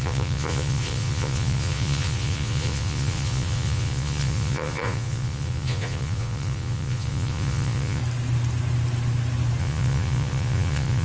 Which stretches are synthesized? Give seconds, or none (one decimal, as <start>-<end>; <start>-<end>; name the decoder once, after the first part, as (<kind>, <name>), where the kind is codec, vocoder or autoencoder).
0.0-8.0 (vocoder, Vocos); 9.6-11.0